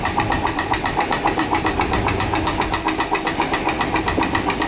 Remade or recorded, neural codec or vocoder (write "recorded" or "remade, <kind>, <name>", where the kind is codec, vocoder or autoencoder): recorded